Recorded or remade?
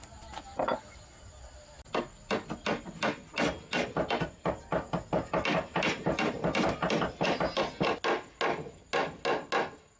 recorded